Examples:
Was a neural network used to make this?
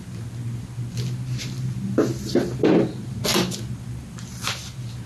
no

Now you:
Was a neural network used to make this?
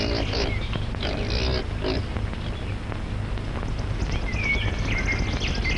no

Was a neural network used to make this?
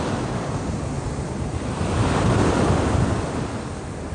no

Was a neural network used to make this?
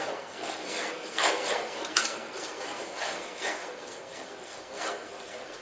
yes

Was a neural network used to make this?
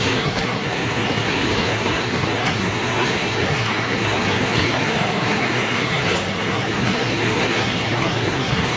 yes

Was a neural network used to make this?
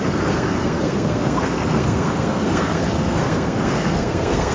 yes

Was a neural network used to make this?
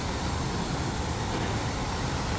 no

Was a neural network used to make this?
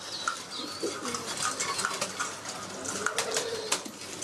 no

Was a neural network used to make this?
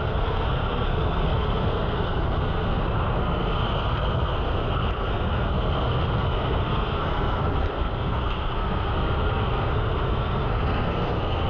yes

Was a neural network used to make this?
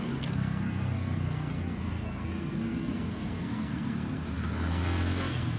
yes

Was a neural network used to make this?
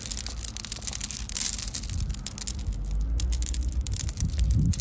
no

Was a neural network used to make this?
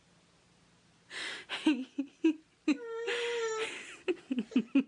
no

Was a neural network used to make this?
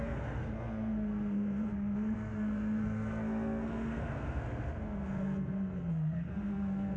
yes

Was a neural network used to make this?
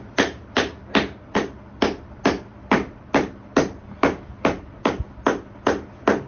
no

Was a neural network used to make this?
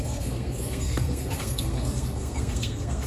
yes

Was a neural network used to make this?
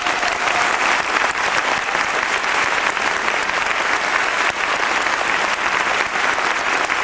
no